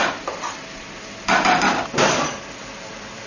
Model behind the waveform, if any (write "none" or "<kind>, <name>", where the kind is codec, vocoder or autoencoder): none